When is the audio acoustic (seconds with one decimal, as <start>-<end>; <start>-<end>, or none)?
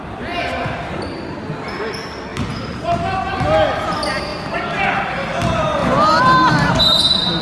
0.0-7.4